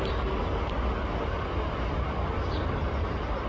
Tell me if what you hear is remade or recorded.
recorded